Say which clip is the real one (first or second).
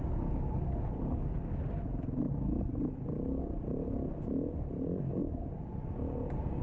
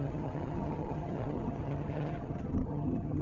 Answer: first